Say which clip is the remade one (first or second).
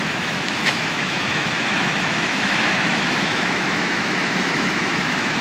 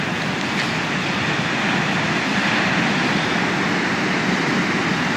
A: first